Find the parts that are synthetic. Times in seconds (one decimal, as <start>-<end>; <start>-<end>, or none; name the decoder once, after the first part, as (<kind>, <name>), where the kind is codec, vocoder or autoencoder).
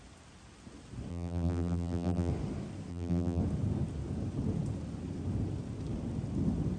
1.1-2.3 (vocoder, BigVGAN v2); 2.9-3.4